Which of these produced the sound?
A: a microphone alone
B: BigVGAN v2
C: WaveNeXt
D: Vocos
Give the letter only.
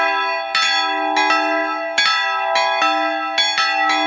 A